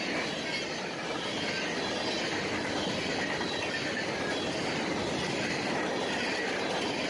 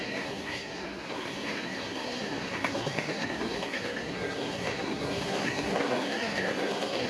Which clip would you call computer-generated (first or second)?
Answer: second